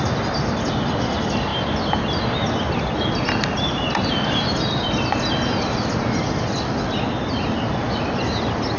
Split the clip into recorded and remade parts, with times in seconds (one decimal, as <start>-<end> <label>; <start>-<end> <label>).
0.0-8.8 recorded